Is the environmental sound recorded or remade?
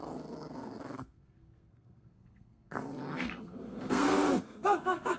remade